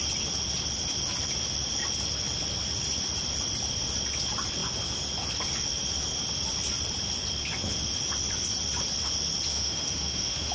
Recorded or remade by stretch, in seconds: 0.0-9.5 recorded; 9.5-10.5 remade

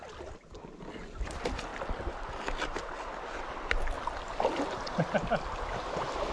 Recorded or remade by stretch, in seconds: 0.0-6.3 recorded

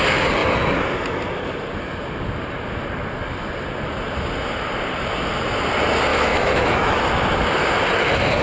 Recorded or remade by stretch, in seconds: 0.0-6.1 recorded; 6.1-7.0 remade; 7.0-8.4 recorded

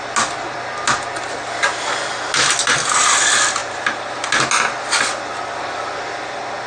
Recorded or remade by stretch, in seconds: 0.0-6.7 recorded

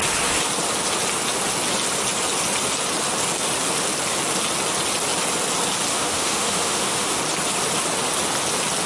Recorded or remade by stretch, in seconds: 0.0-5.9 recorded; 5.9-7.2 remade; 7.2-8.9 recorded

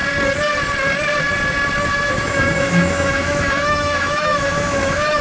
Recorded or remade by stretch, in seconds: 0.0-1.9 recorded; 1.9-5.2 remade

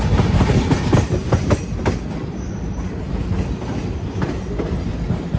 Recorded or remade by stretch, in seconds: 0.0-5.4 recorded